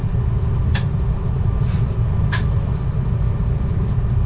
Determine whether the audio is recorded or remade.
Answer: remade